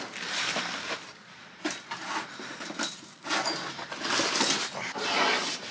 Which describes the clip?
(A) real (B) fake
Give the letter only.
A